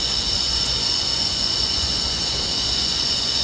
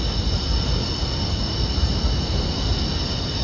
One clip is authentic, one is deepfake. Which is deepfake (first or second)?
first